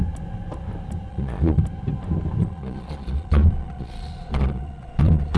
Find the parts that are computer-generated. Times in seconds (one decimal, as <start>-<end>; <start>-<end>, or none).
1.1-1.6; 2.4-5.4